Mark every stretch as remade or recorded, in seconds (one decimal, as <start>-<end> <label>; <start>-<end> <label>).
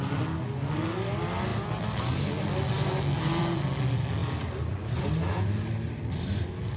0.0-4.2 recorded; 4.2-4.8 remade; 4.8-6.8 recorded